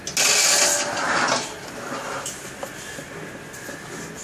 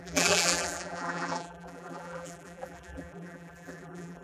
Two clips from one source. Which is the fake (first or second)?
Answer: second